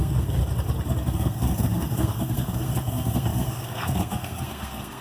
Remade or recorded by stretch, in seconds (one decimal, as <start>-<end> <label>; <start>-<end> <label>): 0.0-0.4 remade; 0.4-1.1 recorded; 1.1-5.0 remade